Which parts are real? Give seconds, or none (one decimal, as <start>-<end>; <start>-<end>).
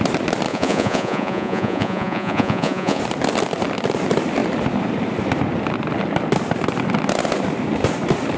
0.0-0.5; 3.0-8.4